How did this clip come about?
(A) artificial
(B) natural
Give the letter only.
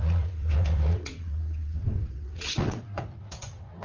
A